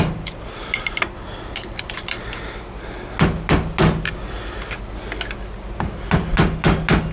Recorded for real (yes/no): yes